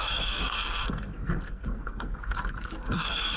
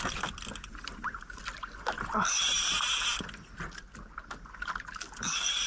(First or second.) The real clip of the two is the second